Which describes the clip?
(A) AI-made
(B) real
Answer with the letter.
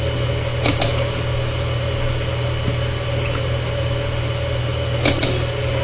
B